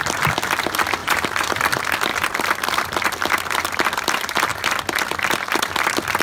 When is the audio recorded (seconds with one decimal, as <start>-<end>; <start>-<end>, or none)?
0.0-1.0; 1.6-6.2